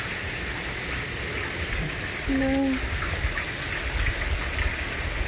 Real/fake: real